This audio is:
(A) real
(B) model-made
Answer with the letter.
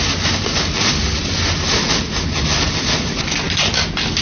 A